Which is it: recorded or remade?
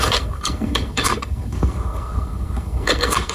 remade